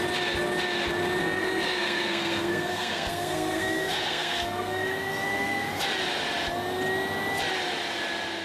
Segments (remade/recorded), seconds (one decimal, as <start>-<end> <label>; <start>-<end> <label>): 0.0-1.2 recorded; 1.2-5.8 remade; 5.8-8.4 recorded